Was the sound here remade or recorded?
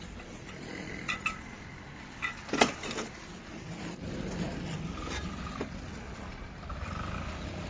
recorded